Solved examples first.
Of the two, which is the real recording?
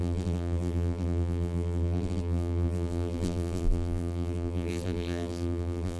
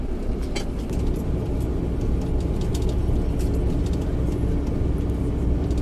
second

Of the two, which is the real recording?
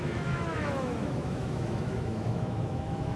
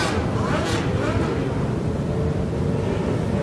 second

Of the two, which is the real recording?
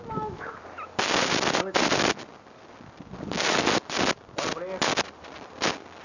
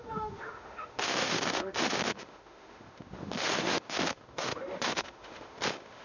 first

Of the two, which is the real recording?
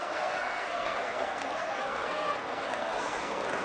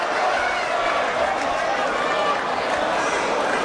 second